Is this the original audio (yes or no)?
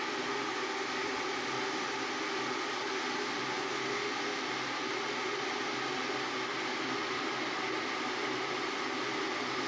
yes